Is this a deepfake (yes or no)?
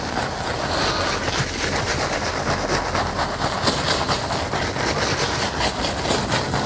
no